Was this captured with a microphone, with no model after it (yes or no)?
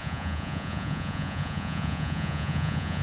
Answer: no